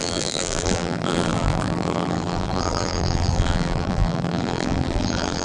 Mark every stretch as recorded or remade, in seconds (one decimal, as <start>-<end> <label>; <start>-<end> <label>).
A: 0.0-5.4 remade